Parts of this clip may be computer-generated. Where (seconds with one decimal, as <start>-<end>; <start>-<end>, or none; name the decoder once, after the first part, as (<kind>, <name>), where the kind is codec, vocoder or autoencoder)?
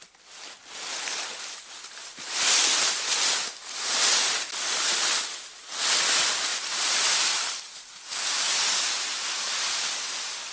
2.0-3.0 (vocoder, BigVGAN v2); 6.5-9.9